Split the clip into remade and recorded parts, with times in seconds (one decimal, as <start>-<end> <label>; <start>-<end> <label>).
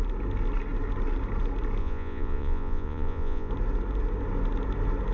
0.0-1.8 recorded; 1.8-3.5 remade; 3.5-5.1 recorded